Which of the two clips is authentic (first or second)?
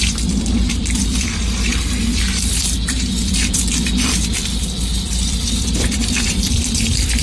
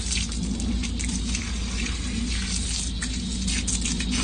second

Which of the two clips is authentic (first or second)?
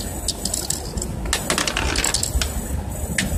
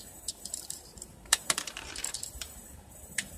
first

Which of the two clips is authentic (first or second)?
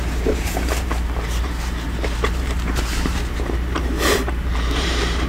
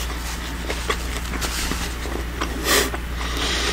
second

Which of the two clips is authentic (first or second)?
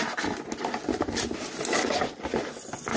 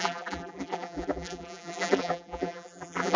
first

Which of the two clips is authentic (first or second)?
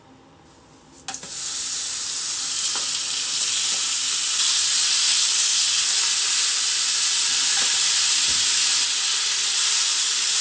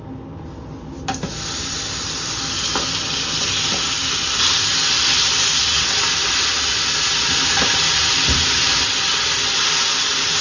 first